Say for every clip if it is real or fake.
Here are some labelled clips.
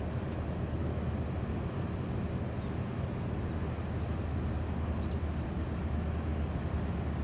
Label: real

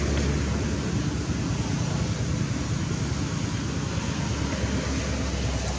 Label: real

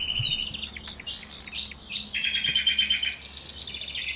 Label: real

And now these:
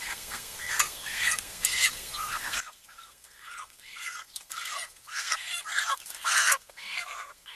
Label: fake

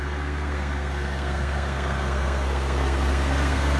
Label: fake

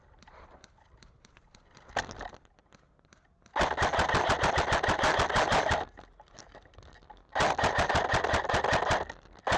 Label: real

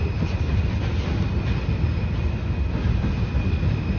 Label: real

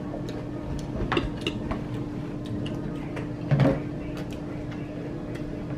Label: real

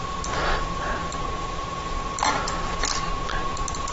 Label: real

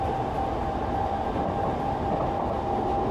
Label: real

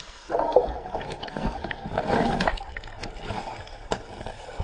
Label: fake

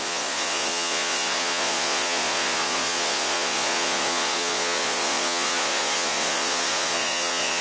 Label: fake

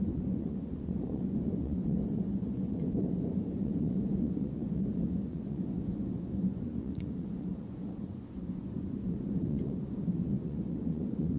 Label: fake